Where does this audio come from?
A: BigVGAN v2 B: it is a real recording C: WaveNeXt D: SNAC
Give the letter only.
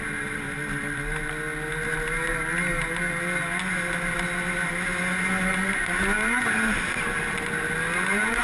B